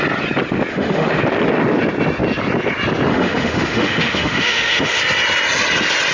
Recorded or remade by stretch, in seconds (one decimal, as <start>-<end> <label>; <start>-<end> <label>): 0.0-0.7 recorded; 0.7-1.2 remade; 1.2-3.1 recorded; 3.1-5.0 remade; 5.0-6.1 recorded